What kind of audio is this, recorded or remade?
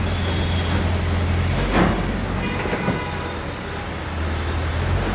recorded